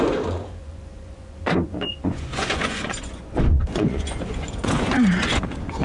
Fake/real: fake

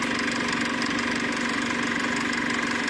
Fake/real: real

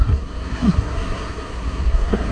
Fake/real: fake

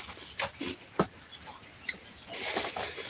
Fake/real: real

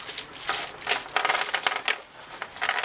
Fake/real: real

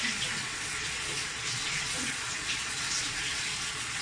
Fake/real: fake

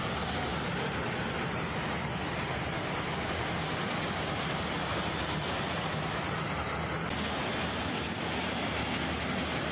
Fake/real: real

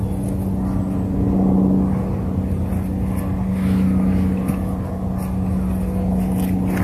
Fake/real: real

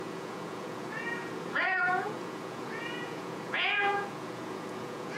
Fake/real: fake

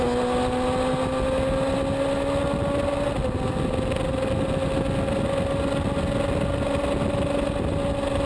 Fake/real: real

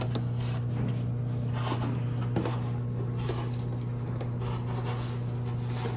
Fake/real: real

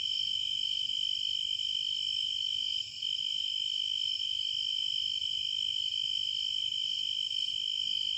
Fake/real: real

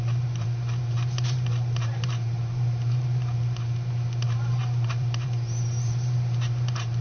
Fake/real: fake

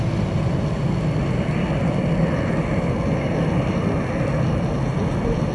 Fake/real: real